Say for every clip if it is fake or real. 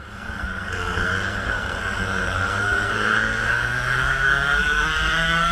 fake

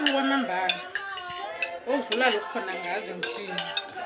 real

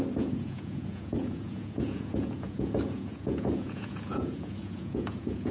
fake